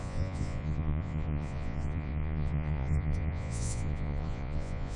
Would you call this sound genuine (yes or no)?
no